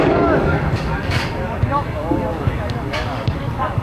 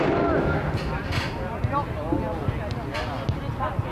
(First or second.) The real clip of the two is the second